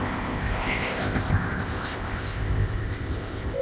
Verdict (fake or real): fake